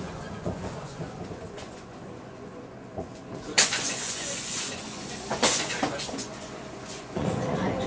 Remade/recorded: remade